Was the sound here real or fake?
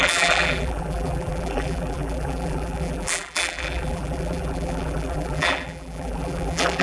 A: fake